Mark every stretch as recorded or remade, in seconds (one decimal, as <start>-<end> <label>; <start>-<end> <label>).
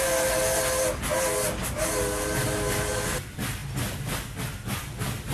0.0-5.3 recorded